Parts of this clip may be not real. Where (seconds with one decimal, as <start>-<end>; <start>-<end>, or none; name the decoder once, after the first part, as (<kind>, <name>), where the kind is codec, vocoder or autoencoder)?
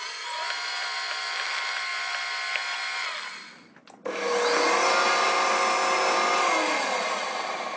none